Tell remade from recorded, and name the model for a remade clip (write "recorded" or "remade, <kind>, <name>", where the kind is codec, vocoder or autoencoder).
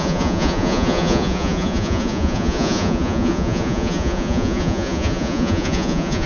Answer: remade, vocoder, Vocos